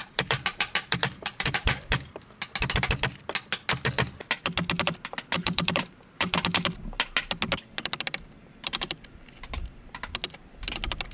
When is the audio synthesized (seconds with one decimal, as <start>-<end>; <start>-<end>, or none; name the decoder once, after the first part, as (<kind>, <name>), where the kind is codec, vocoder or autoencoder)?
0.0-2.2 (vocoder, BigVGAN v2); 5.4-6.4